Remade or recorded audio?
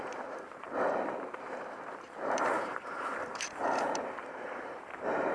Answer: remade